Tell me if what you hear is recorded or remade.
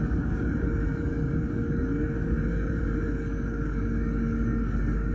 remade